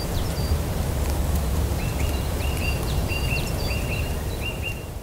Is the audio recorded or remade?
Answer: remade